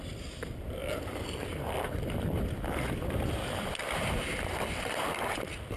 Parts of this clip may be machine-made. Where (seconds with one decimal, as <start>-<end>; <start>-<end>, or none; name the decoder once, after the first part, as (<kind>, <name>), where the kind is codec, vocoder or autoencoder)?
0.0-5.8 (vocoder, BigVGAN v2)